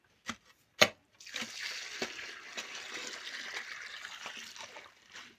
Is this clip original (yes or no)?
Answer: yes